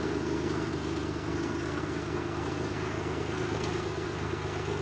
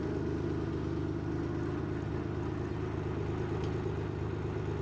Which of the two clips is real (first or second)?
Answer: second